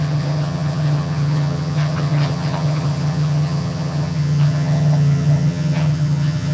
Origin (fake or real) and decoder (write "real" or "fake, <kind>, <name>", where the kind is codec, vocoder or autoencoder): fake, vocoder, HiFi-GAN